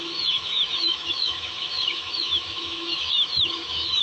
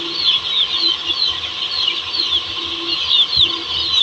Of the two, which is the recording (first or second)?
second